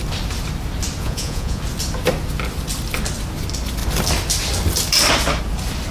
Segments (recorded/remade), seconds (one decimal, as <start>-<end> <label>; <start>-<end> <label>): 0.0-1.0 recorded; 1.0-1.6 remade; 1.6-5.9 recorded